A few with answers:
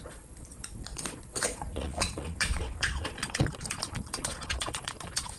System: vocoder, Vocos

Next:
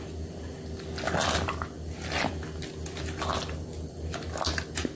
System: none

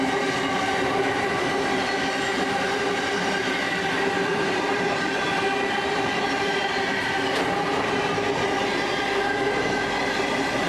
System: none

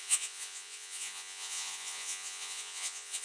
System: vocoder, Vocos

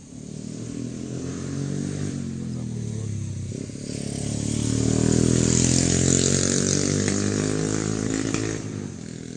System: none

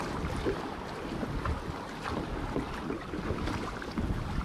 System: none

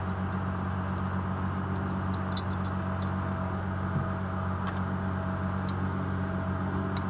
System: none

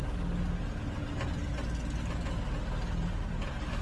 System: none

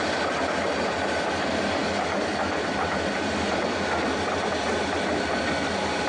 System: none